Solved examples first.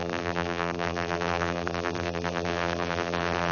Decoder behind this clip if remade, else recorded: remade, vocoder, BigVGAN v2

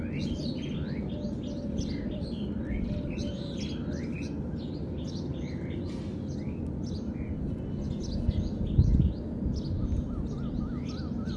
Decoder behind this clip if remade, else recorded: recorded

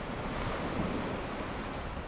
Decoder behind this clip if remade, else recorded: remade, vocoder, BigVGAN v2